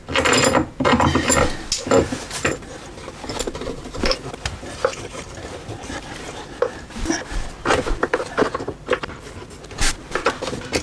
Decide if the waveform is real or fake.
real